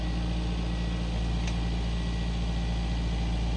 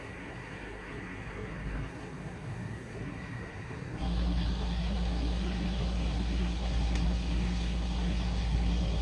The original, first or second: first